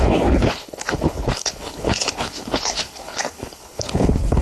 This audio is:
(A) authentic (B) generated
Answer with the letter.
B